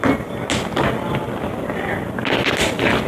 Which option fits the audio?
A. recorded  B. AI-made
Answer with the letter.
A